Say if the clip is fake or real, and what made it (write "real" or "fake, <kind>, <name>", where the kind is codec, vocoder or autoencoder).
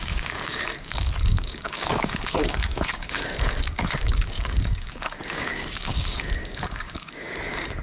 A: fake, codec, DAC